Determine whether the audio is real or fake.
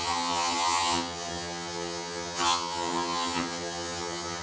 fake